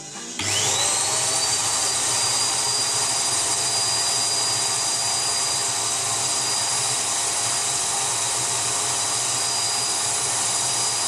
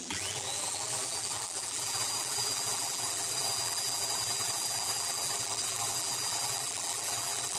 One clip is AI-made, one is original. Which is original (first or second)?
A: first